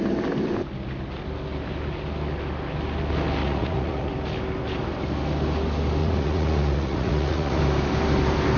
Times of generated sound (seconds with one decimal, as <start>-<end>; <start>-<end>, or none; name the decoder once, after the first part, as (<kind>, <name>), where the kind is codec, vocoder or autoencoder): 3.4-4.1 (vocoder, Vocos); 6.0-7.6